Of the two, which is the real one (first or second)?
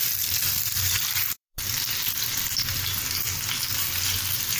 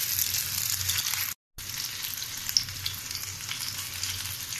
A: second